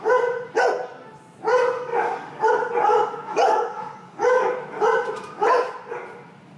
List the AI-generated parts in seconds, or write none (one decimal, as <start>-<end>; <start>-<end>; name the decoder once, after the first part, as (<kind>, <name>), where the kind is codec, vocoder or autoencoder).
1.9-2.5 (codec, DAC); 2.9-4.5

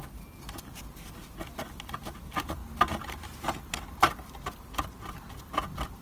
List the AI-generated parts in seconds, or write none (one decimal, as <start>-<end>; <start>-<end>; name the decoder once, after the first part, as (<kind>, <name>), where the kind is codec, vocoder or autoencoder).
none